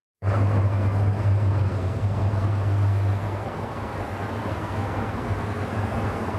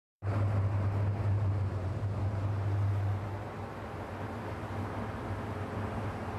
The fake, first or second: first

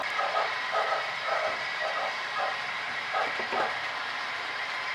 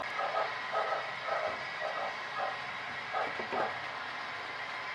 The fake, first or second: first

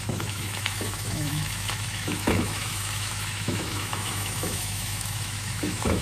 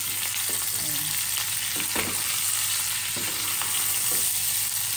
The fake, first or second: first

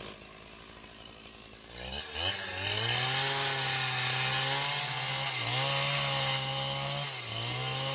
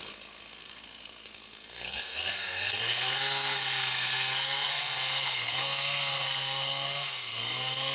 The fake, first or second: second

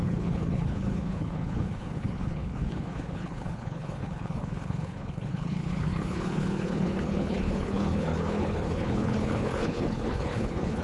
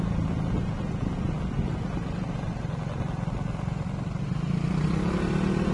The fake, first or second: first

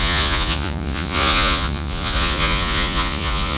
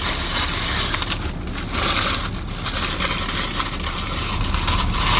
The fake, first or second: first